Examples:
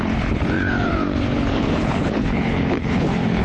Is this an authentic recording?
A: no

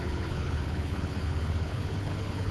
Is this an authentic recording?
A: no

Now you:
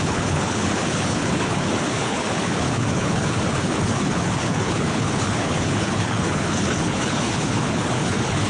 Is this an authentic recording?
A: no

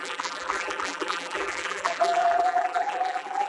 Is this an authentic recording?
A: no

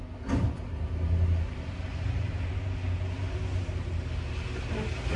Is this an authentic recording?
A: yes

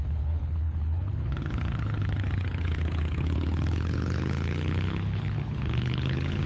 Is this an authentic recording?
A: no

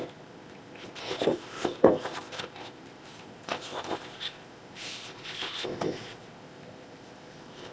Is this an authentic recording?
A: no